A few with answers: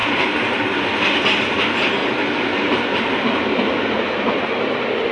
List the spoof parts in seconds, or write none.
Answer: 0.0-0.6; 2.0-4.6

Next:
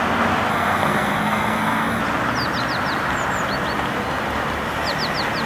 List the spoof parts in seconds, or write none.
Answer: 0.5-2.0

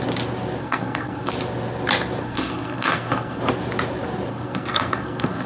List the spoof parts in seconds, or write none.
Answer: 0.6-1.3; 2.2-3.4; 4.3-5.5

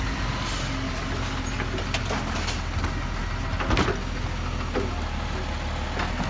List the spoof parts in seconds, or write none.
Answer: none